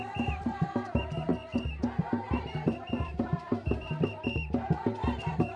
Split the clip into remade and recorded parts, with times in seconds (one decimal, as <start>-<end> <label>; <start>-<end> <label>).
0.0-1.3 remade; 1.3-2.0 recorded; 2.0-5.6 remade